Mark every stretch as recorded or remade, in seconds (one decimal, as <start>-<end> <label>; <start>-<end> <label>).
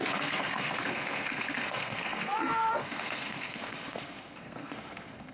0.0-5.3 remade